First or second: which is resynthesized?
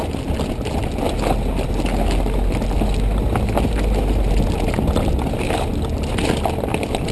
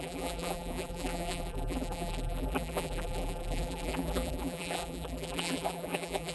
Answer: second